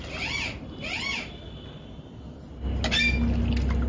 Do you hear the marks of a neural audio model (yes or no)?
no